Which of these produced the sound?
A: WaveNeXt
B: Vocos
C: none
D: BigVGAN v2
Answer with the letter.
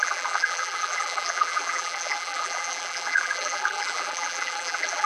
D